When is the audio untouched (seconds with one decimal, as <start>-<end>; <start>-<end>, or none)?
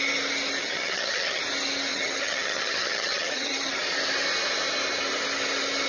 0.0-0.6; 1.4-1.9; 3.7-5.9